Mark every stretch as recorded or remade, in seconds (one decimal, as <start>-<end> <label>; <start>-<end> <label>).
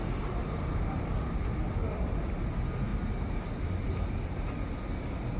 0.0-1.4 remade; 1.4-2.9 recorded; 2.9-3.9 remade; 3.9-5.4 recorded